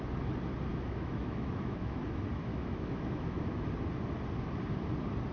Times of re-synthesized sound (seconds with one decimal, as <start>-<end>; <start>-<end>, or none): 0.7-2.0; 2.5-3.7